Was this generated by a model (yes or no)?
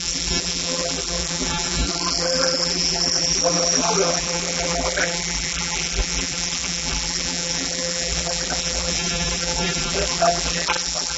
yes